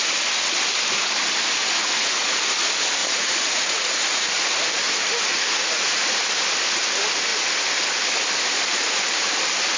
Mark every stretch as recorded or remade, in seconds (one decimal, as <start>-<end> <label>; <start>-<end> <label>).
0.0-1.6 recorded; 1.6-2.3 remade; 2.3-3.0 recorded; 3.0-4.3 remade; 4.3-5.3 recorded; 5.3-6.0 remade; 6.0-9.8 recorded